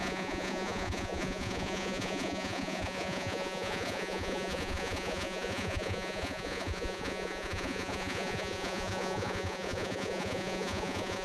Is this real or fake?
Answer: fake